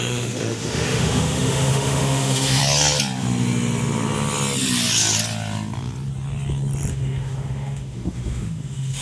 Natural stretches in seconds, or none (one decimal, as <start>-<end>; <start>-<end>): 2.6-6.9